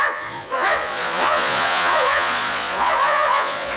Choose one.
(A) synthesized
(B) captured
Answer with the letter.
A